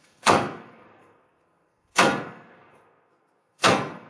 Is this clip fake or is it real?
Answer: fake